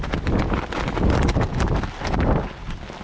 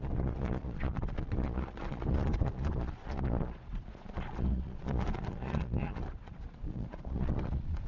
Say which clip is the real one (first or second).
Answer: first